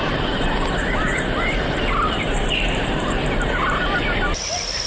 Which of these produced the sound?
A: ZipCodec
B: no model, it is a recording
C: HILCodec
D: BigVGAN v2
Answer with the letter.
B